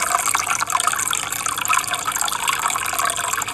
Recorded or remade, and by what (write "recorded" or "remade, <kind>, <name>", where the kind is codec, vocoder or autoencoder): recorded